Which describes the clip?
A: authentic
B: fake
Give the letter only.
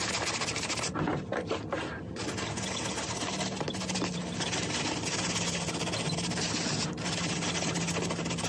A